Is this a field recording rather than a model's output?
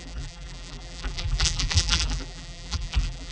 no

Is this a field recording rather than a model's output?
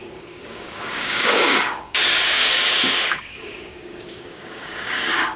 no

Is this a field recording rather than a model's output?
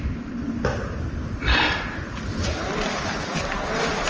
yes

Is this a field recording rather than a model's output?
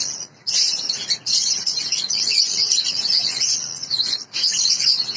no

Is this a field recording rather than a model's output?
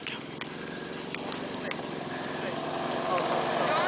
yes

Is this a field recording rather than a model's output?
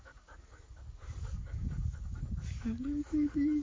no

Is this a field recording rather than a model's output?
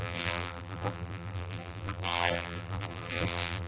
no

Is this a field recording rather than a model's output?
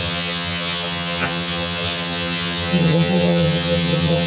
no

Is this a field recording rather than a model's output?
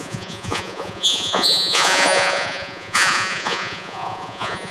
no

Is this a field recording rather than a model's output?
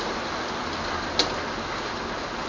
yes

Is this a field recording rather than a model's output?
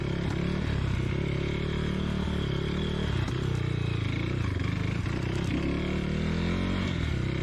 yes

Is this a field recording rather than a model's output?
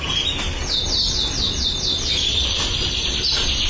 yes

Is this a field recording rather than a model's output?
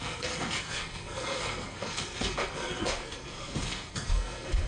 no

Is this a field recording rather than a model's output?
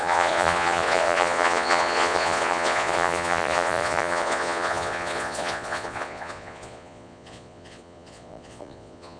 no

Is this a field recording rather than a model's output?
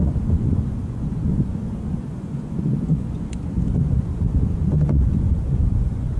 no